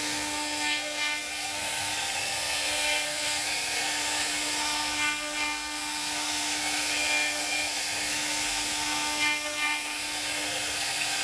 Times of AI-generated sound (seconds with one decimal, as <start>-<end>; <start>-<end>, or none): 0.0-11.2